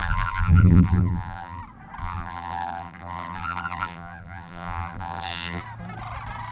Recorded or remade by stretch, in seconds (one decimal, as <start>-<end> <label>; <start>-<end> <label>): 0.0-1.6 remade; 1.6-2.0 recorded; 2.0-5.6 remade; 5.6-6.5 recorded